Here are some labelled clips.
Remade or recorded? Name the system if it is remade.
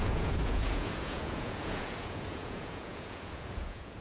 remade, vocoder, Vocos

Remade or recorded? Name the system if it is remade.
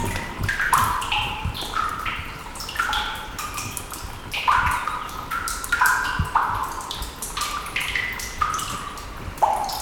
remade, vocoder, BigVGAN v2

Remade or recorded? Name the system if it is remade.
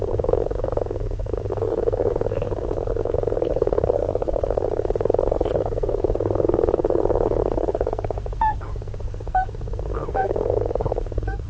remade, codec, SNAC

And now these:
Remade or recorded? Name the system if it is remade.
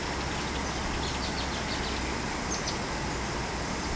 recorded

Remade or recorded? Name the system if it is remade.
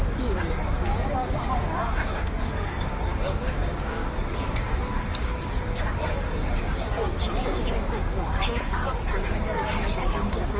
remade, codec, DAC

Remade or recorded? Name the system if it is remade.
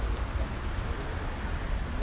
recorded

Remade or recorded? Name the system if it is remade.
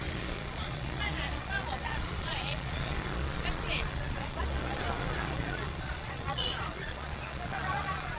remade, vocoder, Vocos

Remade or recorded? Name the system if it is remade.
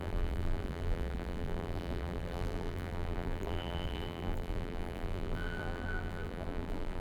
remade, vocoder, BigVGAN v2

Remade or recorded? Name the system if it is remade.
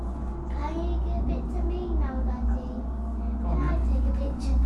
recorded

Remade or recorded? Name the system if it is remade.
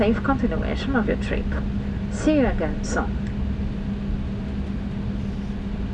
recorded